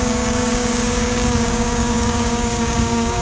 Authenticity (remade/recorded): remade